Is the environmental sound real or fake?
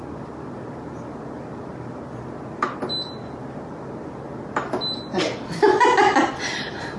real